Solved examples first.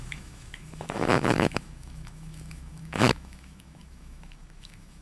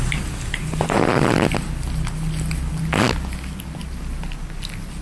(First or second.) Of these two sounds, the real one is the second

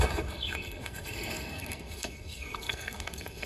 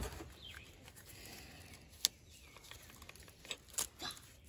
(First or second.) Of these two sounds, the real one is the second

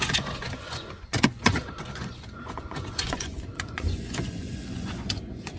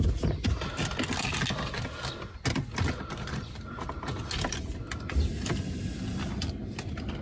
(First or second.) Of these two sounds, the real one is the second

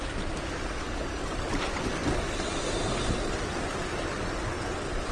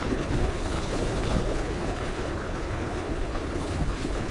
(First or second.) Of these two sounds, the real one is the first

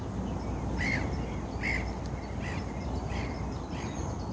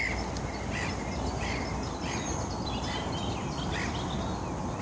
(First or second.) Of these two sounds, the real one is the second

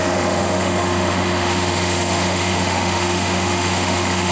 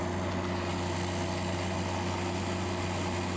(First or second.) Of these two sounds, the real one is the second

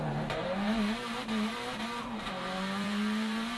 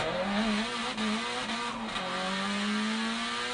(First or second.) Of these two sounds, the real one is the second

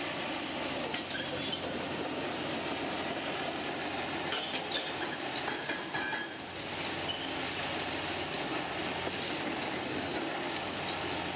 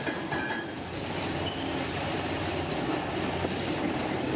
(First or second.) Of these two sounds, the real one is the first